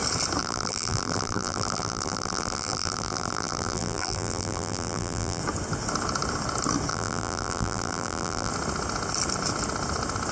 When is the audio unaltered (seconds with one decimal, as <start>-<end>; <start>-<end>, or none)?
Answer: 0.0-0.4; 5.4-6.9; 8.5-10.3